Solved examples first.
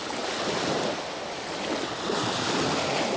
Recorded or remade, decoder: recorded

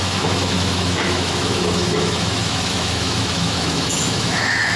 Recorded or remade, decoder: remade, autoencoder, DAC-VAE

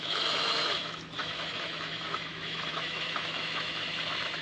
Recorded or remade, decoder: remade, autoencoder, DAC-VAE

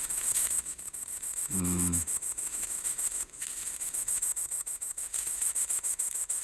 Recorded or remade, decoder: remade, autoencoder, DAC-VAE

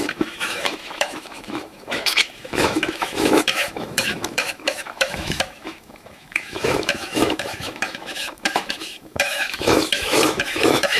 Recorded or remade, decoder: remade, autoencoder, DAC-VAE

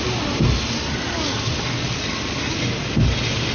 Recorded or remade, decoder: recorded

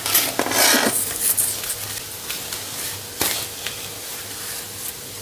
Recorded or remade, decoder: recorded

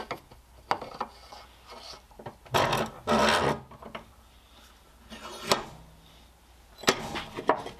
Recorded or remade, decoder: recorded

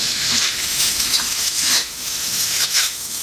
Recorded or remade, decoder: remade, autoencoder, DAC-VAE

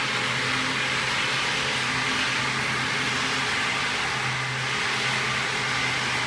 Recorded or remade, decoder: recorded